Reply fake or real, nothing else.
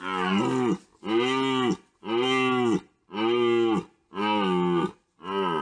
real